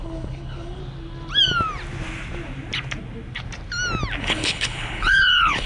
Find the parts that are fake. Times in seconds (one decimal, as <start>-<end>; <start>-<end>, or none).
0.0-0.8; 4.2-5.7